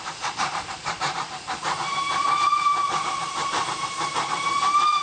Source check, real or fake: fake